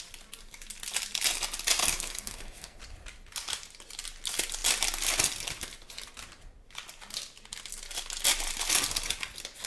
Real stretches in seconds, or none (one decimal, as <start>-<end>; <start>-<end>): 0.0-1.8; 2.8-9.7

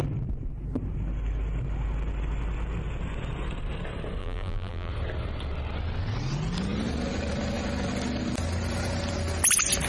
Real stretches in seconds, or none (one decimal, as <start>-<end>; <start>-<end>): 0.0-4.2; 4.9-9.9

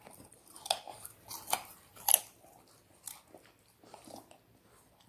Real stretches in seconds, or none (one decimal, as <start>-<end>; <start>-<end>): 0.0-0.9; 2.1-5.1